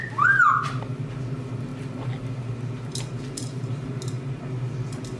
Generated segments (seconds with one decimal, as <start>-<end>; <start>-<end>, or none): none